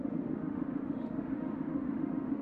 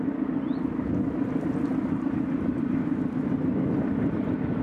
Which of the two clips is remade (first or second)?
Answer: first